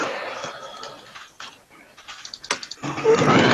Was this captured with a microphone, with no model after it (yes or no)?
yes